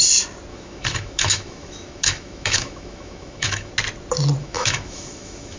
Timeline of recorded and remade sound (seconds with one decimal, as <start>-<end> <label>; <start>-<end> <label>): 0.0-0.5 recorded; 0.5-3.7 remade; 3.7-4.4 recorded; 4.4-5.6 remade